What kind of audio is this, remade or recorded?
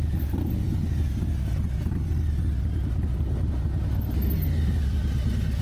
recorded